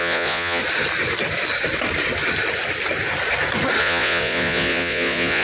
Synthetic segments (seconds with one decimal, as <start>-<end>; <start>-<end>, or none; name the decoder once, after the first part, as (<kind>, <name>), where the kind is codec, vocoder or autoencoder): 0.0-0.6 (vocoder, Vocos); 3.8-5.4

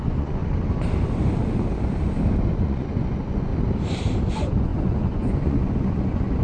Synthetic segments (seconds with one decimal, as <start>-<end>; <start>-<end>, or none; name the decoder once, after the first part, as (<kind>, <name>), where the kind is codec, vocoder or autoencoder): 0.0-0.4 (vocoder, Vocos); 2.6-3.5; 4.3-6.4

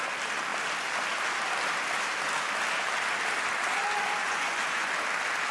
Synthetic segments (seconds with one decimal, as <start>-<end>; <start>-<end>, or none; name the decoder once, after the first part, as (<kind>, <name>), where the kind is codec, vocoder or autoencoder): 4.2-4.9 (vocoder, Vocos)

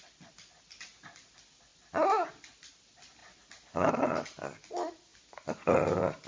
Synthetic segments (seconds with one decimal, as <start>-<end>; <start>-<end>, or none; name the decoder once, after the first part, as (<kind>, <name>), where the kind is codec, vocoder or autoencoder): none